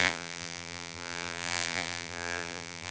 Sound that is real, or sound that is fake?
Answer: fake